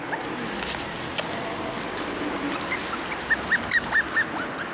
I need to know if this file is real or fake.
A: real